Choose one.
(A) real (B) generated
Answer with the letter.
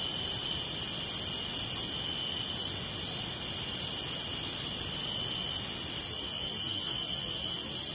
A